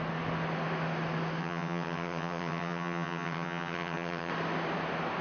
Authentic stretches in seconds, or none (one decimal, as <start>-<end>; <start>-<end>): 0.0-1.4; 4.3-5.2